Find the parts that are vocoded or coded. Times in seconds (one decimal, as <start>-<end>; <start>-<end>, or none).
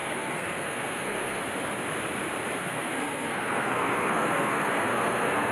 0.0-1.4; 2.6-5.5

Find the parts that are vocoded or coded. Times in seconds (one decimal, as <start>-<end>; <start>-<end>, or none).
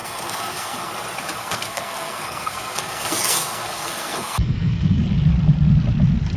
0.0-0.9; 1.4-5.0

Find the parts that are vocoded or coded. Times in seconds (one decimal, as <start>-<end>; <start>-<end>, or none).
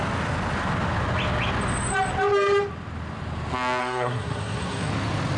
3.8-4.9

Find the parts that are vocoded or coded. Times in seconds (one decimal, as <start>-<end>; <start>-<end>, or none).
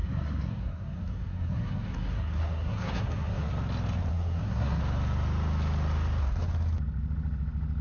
0.0-3.5; 4.1-4.8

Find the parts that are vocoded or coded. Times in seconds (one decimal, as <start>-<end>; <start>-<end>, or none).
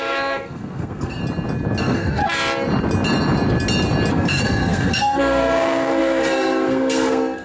0.0-1.2; 1.8-2.2; 4.1-7.4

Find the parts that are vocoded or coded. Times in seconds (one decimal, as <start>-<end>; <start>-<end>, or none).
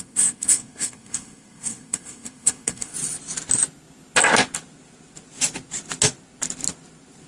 0.0-2.9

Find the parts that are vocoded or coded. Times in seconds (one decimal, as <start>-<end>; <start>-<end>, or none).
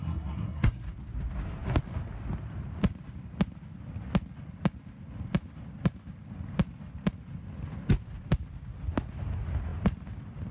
0.0-0.8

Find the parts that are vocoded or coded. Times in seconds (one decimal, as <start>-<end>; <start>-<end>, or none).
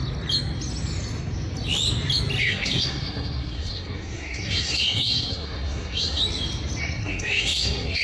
2.4-6.2; 6.8-8.0